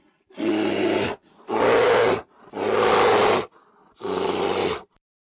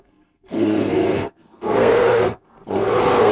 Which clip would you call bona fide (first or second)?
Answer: first